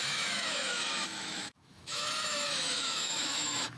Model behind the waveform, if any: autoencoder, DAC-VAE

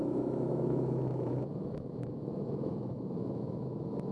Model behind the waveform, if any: autoencoder, DAC-VAE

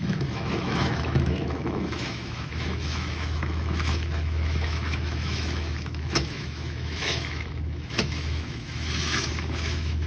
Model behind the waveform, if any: autoencoder, DAC-VAE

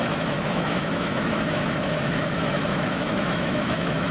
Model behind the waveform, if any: autoencoder, DAC-VAE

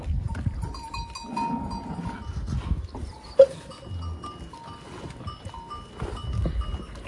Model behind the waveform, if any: none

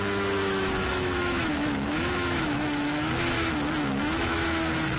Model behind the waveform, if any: autoencoder, DAC-VAE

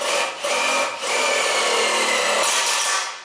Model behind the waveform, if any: none